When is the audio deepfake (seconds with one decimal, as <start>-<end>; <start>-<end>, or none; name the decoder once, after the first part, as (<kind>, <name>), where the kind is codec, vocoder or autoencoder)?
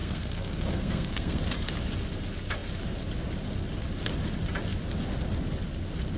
0.0-1.4 (codec, SNAC)